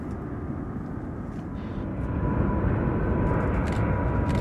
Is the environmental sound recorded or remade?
recorded